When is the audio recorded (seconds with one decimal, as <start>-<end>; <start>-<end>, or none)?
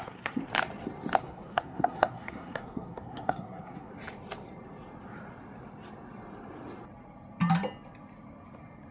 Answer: 0.4-1.2; 3.9-8.9